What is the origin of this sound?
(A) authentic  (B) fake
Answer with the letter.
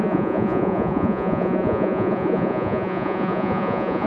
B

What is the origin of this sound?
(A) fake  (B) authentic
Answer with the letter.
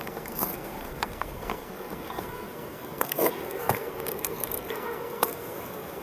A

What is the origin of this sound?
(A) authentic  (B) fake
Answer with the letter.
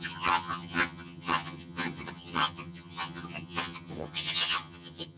B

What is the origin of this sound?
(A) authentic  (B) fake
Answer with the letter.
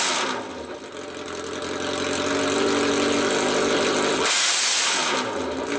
A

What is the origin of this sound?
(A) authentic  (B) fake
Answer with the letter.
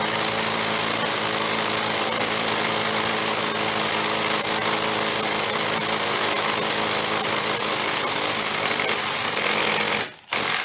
A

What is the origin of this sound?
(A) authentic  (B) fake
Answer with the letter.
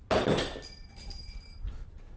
A